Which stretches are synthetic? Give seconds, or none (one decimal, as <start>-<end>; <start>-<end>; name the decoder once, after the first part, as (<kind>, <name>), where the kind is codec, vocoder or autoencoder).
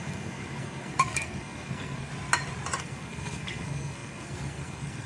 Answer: 0.0-2.1 (codec, SNAC); 2.8-5.1